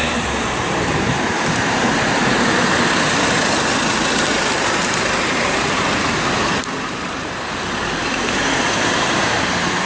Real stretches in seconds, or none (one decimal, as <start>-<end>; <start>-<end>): 2.2-4.8; 6.6-7.1